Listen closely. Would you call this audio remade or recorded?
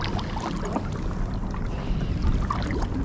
recorded